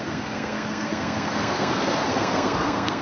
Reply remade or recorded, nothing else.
remade